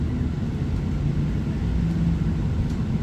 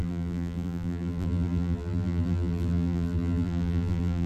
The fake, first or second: second